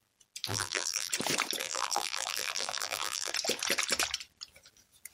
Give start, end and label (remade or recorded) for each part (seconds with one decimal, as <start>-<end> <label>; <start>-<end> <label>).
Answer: 0.0-0.5 recorded; 0.5-1.1 remade; 1.1-1.6 recorded; 1.6-3.3 remade; 3.3-5.1 recorded